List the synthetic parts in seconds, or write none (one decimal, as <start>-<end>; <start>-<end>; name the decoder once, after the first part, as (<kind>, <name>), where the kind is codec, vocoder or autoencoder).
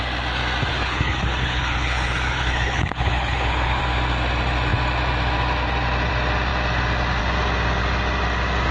0.7-3.8 (codec, HILCodec)